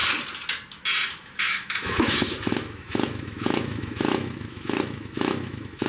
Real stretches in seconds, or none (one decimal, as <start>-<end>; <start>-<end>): 0.0-1.1